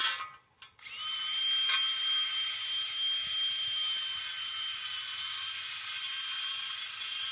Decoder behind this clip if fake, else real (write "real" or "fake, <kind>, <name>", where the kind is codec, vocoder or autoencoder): real